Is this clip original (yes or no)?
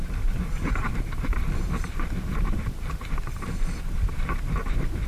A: no